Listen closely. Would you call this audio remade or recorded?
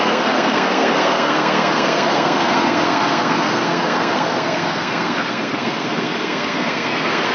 remade